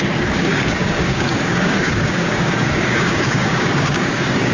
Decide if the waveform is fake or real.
fake